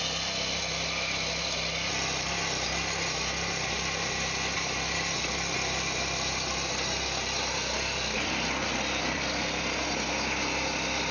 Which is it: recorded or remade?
recorded